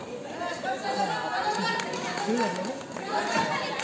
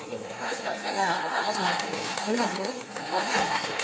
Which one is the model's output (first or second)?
second